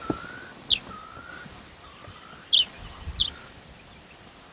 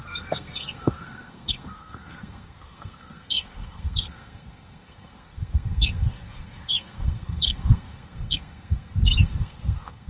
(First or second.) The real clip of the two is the first